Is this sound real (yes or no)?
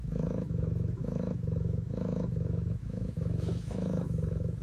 no